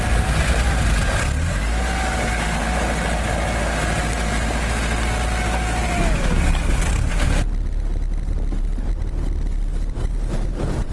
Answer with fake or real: real